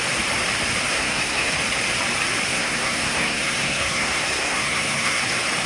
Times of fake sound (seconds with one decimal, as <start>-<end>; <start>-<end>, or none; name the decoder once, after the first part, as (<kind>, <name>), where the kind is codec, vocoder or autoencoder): 0.9-1.5 (codec, SNAC); 2.5-5.2